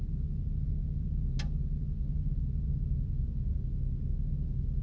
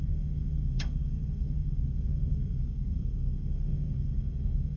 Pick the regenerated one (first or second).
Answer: second